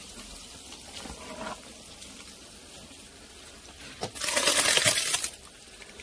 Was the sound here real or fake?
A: real